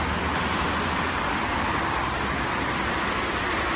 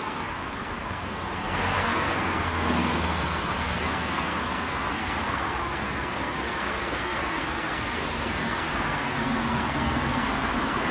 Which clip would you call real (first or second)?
first